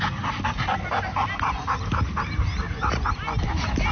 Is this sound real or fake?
real